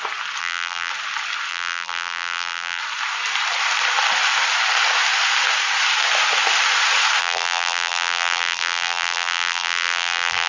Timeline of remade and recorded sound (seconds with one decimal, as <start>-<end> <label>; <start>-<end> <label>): 0.0-0.4 recorded; 0.4-0.9 remade; 0.9-1.5 recorded; 1.5-2.8 remade; 2.8-7.2 recorded; 7.2-10.5 remade